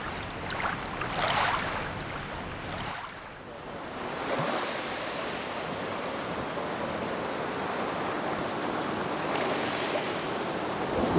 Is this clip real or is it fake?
real